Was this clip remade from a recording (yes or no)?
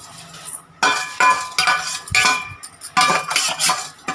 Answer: no